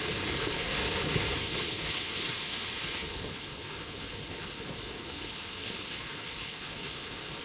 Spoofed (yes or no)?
yes